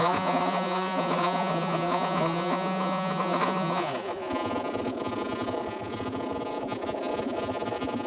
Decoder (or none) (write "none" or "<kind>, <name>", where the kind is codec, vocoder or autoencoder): vocoder, Vocos